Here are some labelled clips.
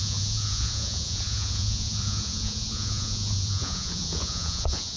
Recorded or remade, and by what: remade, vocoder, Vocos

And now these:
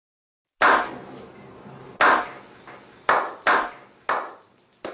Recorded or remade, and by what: recorded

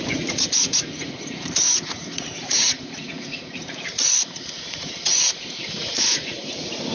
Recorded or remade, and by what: remade, vocoder, Vocos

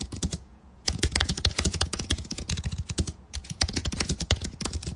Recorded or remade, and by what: remade, vocoder, Vocos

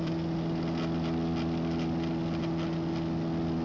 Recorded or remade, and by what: recorded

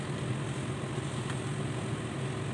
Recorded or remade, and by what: recorded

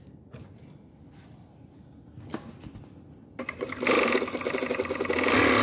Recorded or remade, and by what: recorded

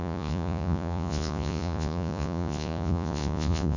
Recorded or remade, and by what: remade, vocoder, Vocos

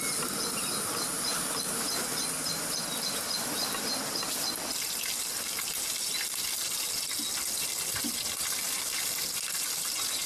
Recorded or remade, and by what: recorded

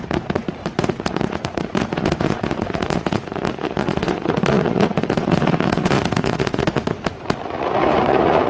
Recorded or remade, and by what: remade, vocoder, Vocos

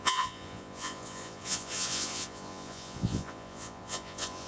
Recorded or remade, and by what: remade, vocoder, Vocos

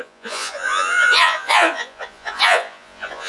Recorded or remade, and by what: remade, vocoder, Vocos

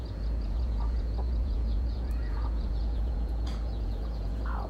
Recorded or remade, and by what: remade, vocoder, Vocos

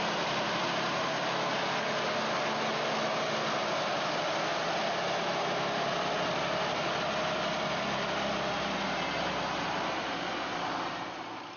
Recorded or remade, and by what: recorded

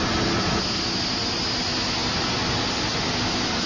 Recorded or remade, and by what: recorded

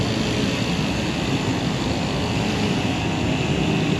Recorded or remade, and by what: recorded